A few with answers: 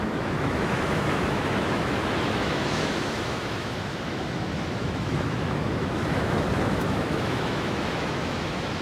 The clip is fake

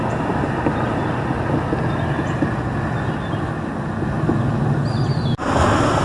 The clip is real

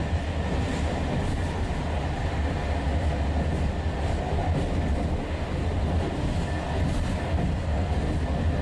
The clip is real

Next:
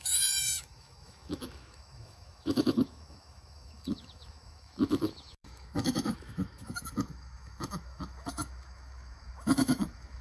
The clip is fake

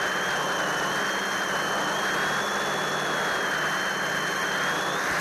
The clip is real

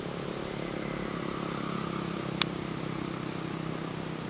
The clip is real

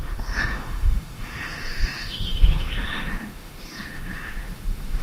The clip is fake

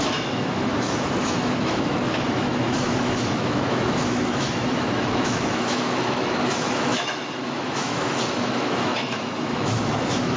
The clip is fake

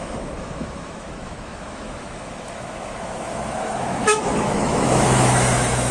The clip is fake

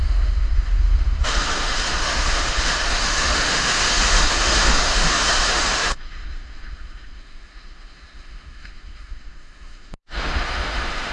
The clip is fake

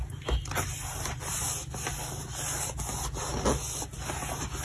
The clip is real